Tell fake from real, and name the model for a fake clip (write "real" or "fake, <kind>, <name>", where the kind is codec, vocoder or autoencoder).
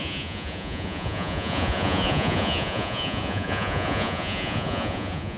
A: fake, vocoder, Vocos